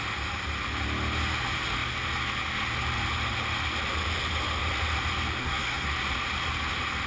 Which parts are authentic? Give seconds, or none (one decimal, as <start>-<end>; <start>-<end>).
0.0-5.4; 5.9-7.1